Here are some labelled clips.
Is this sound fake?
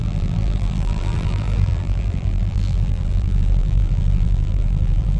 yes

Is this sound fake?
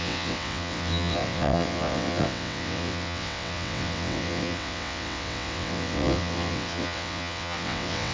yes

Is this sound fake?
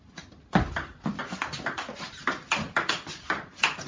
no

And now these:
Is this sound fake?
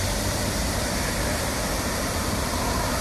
yes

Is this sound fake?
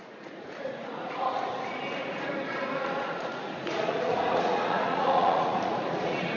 yes